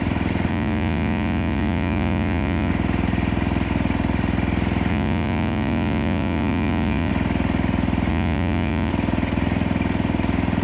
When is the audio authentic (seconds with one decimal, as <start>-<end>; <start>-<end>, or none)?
0.0-0.5; 2.7-4.9; 7.1-8.1; 8.9-10.6

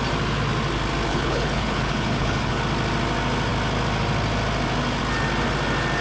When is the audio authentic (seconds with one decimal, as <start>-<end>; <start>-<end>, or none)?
0.0-1.1; 2.6-6.0

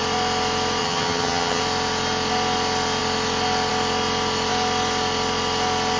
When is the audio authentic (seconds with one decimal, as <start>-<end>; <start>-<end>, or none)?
0.0-0.8; 1.6-6.0